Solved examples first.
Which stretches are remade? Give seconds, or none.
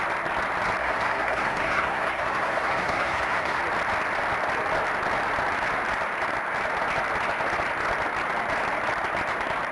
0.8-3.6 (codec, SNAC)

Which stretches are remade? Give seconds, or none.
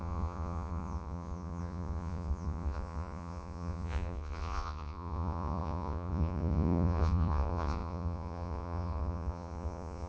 0.0-10.1 (vocoder, Vocos)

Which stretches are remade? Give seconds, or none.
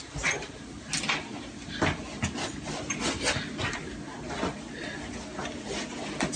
none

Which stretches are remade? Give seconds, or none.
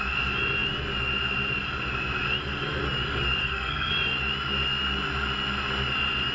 3.4-3.9 (codec, SNAC)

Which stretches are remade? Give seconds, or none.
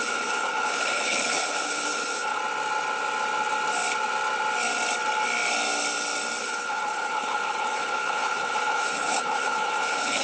0.0-2.4 (codec, HILCodec); 6.4-10.2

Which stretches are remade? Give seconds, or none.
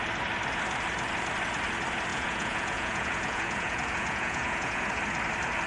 2.1-4.9 (vocoder, Vocos)